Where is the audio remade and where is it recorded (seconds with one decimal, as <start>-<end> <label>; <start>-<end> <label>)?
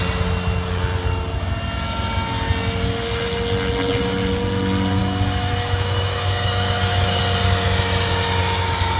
0.0-5.0 recorded; 5.0-7.2 remade; 7.2-9.0 recorded